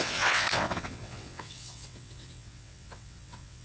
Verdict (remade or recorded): remade